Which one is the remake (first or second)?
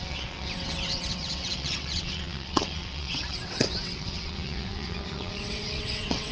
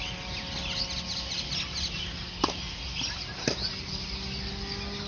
first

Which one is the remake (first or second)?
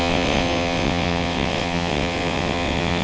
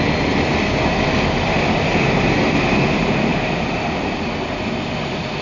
first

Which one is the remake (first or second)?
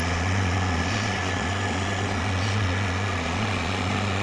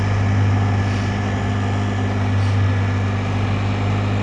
first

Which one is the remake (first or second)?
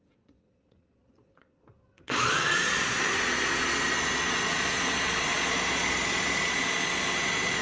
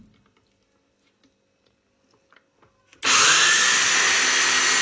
first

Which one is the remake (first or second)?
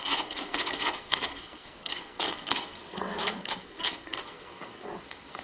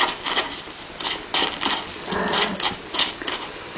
first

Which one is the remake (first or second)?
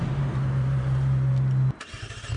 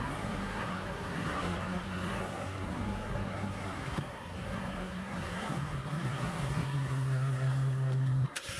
second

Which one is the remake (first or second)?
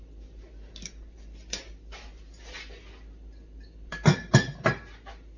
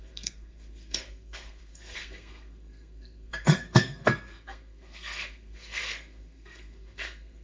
second